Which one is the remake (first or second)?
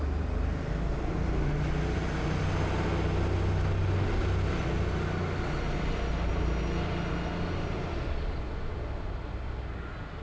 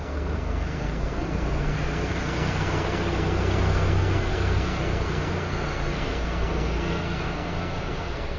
second